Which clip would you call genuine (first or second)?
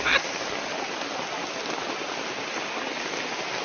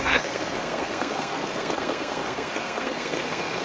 first